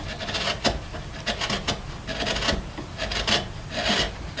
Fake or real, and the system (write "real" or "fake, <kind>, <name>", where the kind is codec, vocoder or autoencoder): real